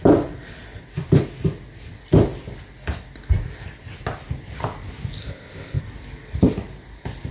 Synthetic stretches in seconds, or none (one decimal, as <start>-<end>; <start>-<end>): 5.2-5.8